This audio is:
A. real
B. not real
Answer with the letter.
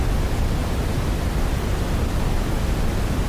A